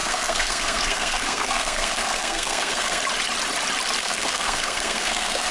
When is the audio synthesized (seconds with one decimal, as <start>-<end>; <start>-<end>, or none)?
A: 0.0-3.0; 4.0-5.5